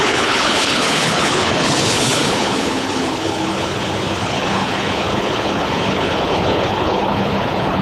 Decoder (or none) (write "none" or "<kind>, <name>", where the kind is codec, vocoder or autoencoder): codec, HILCodec